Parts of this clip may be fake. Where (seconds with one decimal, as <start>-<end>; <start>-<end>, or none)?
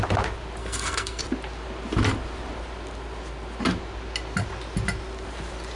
0.6-1.2